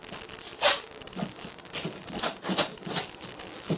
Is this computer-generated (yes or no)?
no